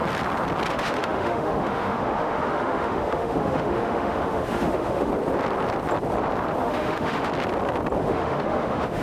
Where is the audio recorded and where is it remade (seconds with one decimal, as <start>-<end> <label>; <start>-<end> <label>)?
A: 0.0-0.7 recorded; 0.7-5.1 remade; 5.1-6.6 recorded; 6.6-7.3 remade; 7.3-8.0 recorded; 8.0-9.0 remade

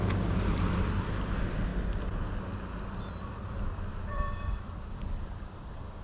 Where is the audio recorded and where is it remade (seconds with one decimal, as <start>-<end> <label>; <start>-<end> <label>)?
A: 0.0-1.7 remade; 1.7-3.0 recorded; 3.0-6.0 remade

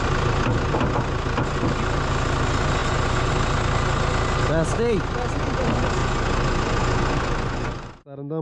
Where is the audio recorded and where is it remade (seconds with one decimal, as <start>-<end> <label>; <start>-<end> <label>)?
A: 0.0-2.8 recorded; 2.8-3.3 remade; 3.3-6.0 recorded; 6.0-7.9 remade; 7.9-8.4 recorded

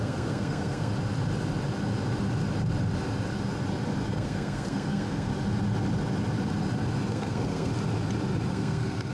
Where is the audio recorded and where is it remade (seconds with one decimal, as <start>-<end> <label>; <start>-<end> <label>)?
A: 0.0-0.9 remade; 0.9-4.1 recorded; 4.1-5.3 remade; 5.3-7.1 recorded; 7.1-7.7 remade; 7.7-8.5 recorded; 8.5-9.1 remade

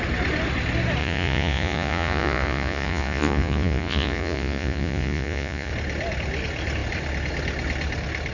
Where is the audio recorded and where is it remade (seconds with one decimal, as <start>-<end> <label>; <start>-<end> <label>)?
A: 0.0-1.0 recorded; 1.0-5.7 remade; 5.7-8.3 recorded

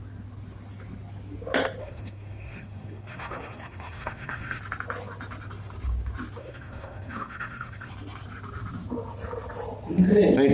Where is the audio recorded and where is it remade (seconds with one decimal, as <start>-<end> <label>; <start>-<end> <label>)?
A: 0.0-1.8 recorded; 1.8-4.6 remade; 4.6-6.4 recorded; 6.4-7.9 remade; 7.9-10.5 recorded

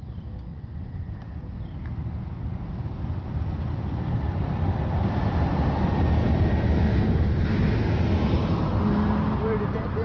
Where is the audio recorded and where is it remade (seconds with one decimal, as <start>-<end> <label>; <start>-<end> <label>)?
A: 0.0-0.5 recorded; 0.5-1.2 remade; 1.2-10.0 recorded

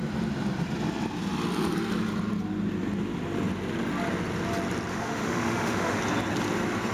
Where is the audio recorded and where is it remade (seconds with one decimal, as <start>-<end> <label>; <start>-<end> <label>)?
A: 0.0-4.9 recorded; 4.9-6.0 remade; 6.0-6.9 recorded